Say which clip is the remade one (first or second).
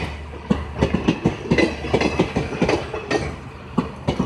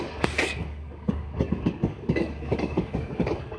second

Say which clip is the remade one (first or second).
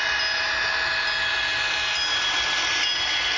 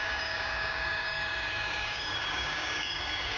second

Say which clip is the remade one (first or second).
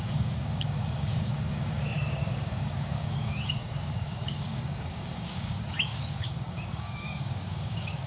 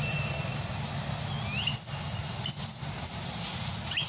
first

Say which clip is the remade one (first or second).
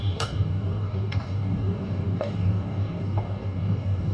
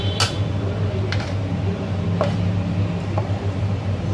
first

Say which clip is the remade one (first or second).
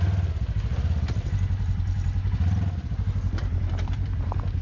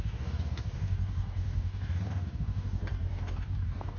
second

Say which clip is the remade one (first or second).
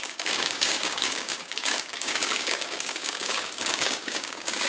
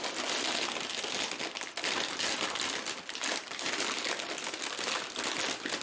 first